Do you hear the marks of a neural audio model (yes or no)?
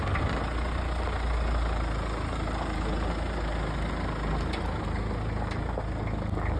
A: no